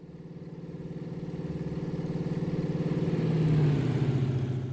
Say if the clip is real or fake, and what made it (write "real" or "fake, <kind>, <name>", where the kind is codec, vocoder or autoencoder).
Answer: real